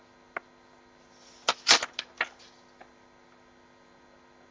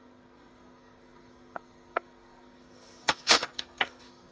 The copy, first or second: second